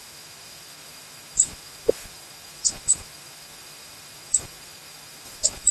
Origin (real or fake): fake